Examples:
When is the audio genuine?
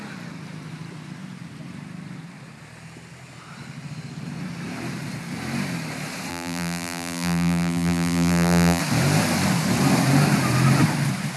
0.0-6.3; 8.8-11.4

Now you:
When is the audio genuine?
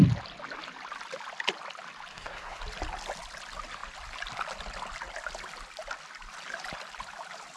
0.0-2.1; 2.6-7.6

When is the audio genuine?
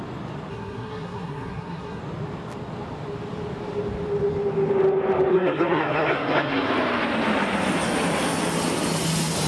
0.0-0.5; 2.0-5.3; 6.7-9.5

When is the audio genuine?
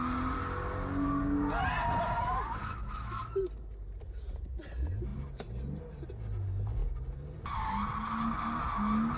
0.0-2.6; 3.2-9.2